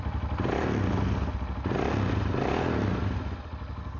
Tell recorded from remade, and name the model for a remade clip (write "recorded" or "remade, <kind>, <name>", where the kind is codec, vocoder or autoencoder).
recorded